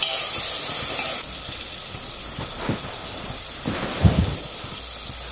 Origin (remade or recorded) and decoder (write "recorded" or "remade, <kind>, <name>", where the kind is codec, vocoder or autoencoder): recorded